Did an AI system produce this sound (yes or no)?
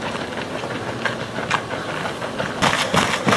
no